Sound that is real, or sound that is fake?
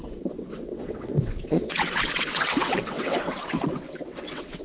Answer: fake